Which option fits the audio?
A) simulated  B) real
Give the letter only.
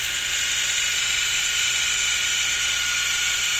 B